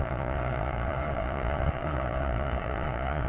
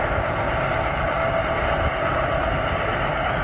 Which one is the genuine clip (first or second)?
second